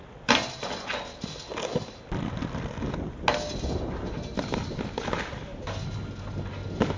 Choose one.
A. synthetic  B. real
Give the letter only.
B